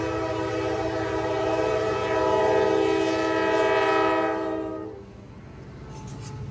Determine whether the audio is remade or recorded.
recorded